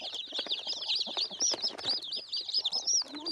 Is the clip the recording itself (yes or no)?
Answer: no